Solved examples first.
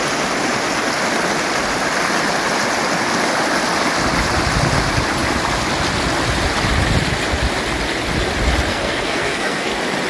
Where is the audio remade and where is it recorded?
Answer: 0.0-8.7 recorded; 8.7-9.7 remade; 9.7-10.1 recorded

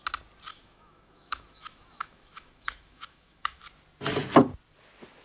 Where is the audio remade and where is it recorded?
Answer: 0.0-0.5 recorded; 0.5-3.6 remade; 3.6-5.2 recorded

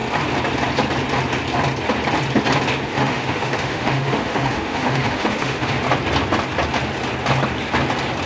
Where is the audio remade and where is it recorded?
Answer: 0.0-2.9 recorded; 2.9-5.8 remade; 5.8-8.3 recorded